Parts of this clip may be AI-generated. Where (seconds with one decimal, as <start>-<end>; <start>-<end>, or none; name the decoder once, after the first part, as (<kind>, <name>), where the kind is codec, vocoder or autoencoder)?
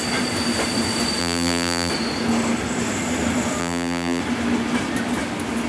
1.2-1.9 (vocoder, BigVGAN v2); 3.6-4.2